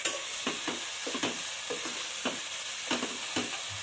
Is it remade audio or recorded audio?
recorded